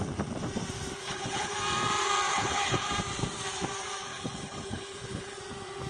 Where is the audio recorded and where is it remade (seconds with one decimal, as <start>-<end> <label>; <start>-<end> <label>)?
0.0-1.0 recorded; 1.0-1.5 remade; 1.5-2.3 recorded; 2.3-2.9 remade; 2.9-4.1 recorded; 4.1-5.4 remade; 5.4-5.9 recorded